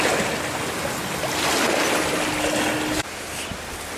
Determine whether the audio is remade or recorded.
recorded